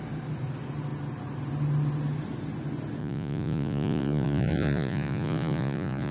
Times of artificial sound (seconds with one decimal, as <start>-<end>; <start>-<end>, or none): 3.0-6.1